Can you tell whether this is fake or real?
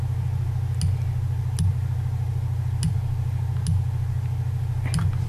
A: real